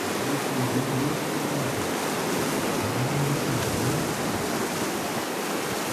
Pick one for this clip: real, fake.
real